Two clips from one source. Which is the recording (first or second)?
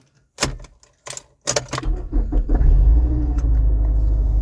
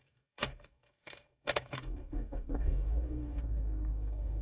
first